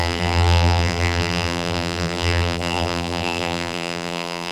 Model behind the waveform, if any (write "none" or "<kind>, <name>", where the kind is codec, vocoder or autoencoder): vocoder, BigVGAN v2